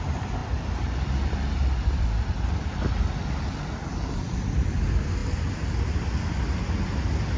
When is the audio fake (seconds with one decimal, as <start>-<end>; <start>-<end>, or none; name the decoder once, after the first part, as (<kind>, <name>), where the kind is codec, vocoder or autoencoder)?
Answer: 0.4-4.8 (vocoder, BigVGAN v2)